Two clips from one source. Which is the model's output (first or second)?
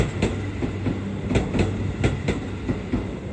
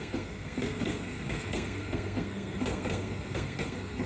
second